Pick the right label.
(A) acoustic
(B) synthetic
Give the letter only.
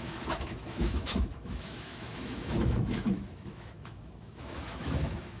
B